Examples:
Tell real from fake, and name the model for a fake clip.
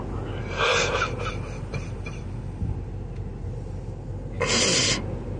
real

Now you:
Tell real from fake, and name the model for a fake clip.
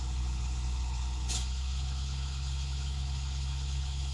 fake, codec, HILCodec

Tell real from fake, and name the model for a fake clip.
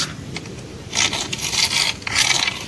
real